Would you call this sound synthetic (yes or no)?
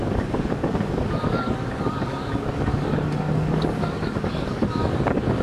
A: yes